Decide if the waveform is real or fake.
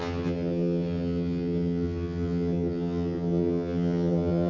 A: fake